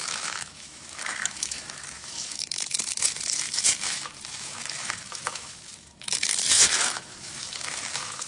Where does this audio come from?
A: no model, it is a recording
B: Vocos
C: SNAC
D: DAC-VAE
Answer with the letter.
D